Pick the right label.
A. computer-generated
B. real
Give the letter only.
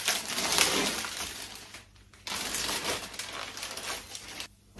B